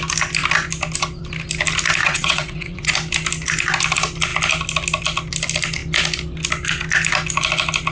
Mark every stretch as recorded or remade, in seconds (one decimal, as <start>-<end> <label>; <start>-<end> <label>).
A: 0.0-2.0 recorded; 2.0-2.9 remade; 2.9-7.9 recorded